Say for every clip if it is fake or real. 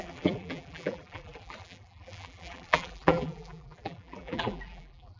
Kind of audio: fake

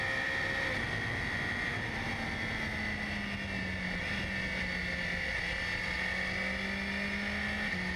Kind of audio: real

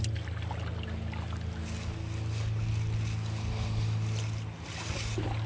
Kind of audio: real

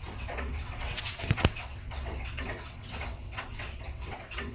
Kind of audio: fake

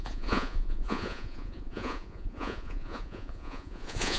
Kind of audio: fake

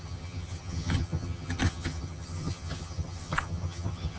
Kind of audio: fake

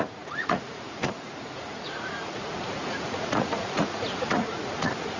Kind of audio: fake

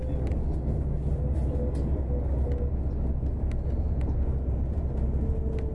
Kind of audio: real